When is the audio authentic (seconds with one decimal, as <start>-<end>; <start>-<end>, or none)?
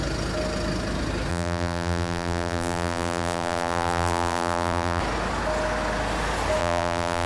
0.0-1.3; 5.0-6.6